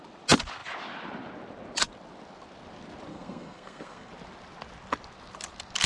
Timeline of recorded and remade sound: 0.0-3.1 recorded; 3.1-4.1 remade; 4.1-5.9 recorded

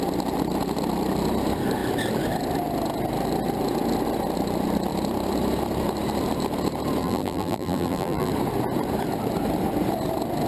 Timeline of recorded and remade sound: 0.0-7.0 recorded; 7.0-8.3 remade; 8.3-10.5 recorded

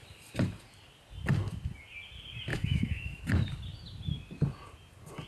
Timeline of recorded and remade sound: 0.0-2.5 recorded; 2.5-3.2 remade; 3.2-5.3 recorded